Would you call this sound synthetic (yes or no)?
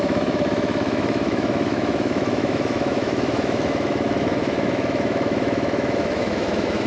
yes